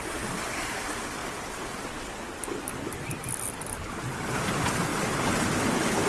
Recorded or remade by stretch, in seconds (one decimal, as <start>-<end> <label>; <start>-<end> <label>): 0.0-1.2 recorded; 1.2-1.9 remade; 1.9-2.7 recorded; 2.7-4.3 remade; 4.3-4.9 recorded; 4.9-5.5 remade; 5.5-6.1 recorded